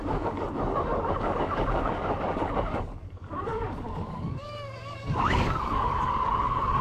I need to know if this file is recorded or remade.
remade